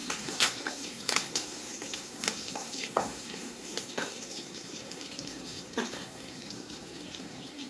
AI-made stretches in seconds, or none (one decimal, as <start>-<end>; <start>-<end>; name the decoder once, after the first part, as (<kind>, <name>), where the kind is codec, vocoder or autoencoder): 0.0-7.7 (codec, SNAC)